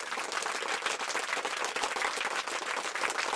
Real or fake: real